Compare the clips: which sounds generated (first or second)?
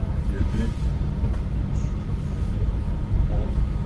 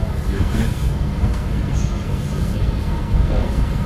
second